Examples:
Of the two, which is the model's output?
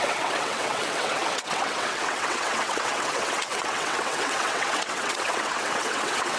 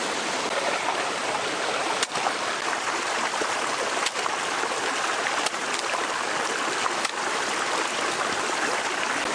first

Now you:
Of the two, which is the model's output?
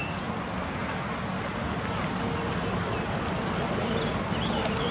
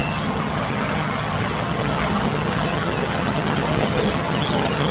second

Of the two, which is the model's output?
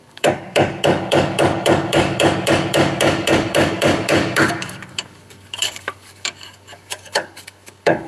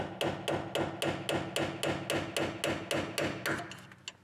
first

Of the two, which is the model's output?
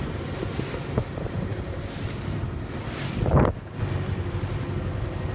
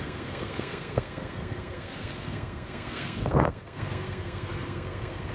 second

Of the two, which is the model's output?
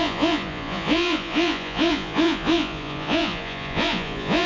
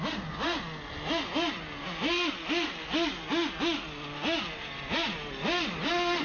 first